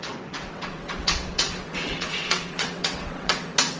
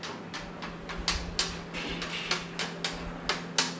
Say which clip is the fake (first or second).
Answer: first